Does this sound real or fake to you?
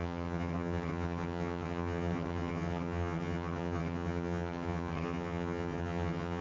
fake